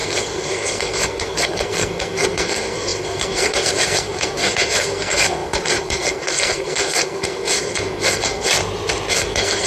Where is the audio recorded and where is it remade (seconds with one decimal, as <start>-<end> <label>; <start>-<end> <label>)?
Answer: 0.0-8.5 remade; 8.5-9.1 recorded; 9.1-9.7 remade